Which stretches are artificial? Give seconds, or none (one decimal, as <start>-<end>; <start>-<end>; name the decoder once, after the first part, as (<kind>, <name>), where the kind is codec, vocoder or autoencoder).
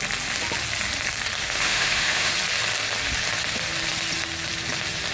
1.4-2.3 (autoencoder, DAC-VAE)